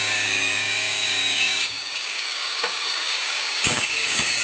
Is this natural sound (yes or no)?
no